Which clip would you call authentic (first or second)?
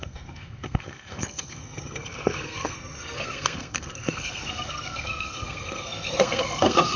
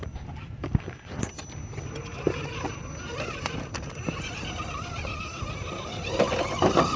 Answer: second